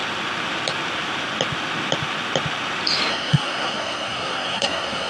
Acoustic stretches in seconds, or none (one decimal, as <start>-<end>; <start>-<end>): 0.0-3.1